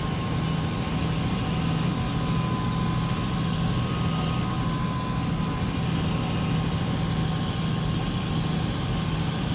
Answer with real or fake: real